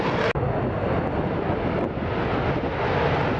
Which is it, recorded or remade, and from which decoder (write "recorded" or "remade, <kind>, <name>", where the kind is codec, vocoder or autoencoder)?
recorded